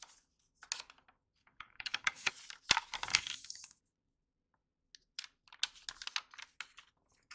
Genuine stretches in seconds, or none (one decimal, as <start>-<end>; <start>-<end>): 0.0-1.4; 2.3-3.1; 3.8-7.3